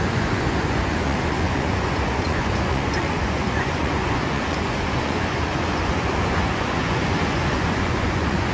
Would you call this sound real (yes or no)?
no